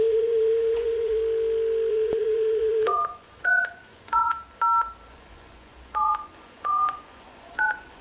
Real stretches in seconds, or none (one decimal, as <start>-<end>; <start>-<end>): 1.2-1.9; 4.3-5.1